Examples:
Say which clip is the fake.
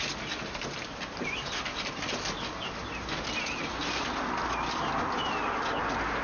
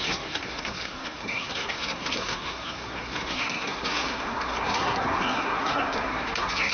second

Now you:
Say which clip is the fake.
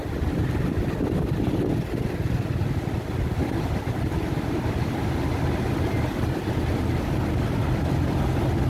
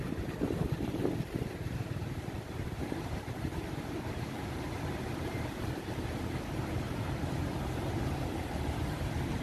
second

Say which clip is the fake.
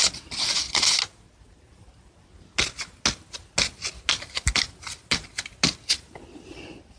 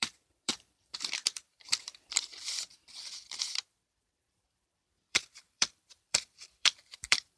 second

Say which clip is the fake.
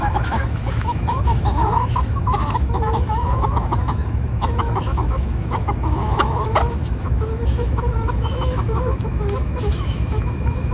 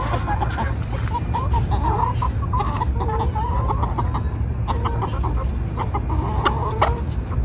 first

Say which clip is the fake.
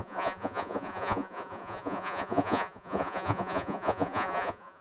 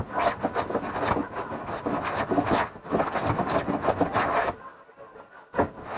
first